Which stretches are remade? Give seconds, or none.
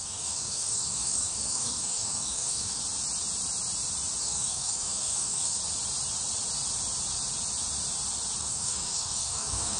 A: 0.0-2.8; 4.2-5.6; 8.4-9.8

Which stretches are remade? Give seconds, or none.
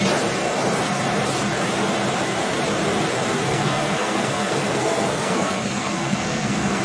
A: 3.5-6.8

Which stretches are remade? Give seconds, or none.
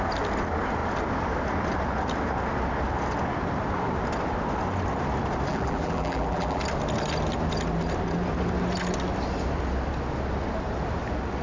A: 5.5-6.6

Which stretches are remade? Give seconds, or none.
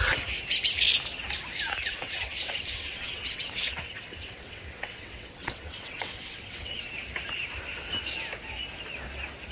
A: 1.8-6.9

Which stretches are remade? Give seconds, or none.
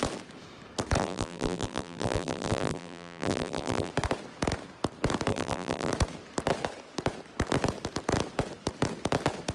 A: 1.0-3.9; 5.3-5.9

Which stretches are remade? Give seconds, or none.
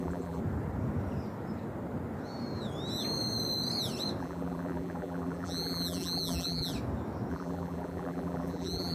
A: 0.0-0.4; 4.2-6.7; 7.3-8.9